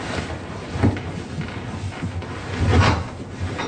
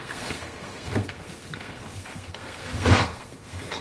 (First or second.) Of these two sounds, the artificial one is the second